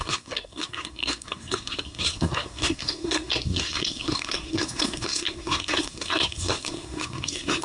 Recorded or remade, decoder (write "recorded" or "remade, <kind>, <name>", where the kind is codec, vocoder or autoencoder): remade, codec, SNAC